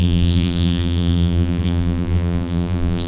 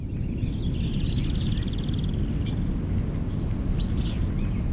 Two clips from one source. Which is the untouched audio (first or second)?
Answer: second